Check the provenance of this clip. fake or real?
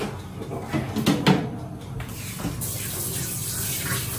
real